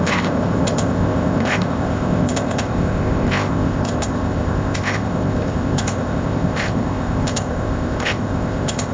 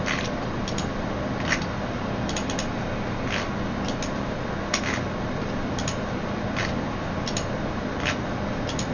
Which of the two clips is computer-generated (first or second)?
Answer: first